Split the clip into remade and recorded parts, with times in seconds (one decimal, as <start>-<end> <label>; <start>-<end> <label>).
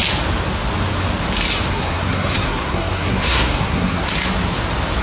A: 0.0-1.7 recorded; 1.7-4.1 remade; 4.1-5.0 recorded